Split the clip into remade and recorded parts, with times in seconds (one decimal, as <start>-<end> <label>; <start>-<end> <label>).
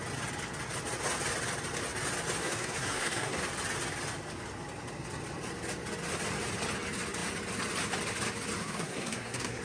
0.0-2.4 recorded; 2.4-3.4 remade; 3.4-8.6 recorded; 8.6-9.6 remade